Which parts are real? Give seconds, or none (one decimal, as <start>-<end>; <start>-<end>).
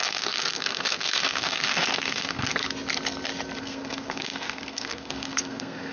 2.6-3.6